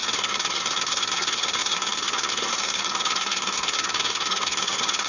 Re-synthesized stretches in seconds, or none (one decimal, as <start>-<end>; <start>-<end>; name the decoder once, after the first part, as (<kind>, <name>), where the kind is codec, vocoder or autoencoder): 0.0-5.1 (codec, SNAC)